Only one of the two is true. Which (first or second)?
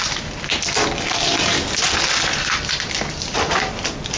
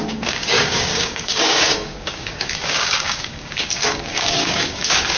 first